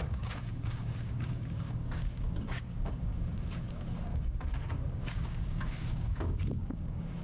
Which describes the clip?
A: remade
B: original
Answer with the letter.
A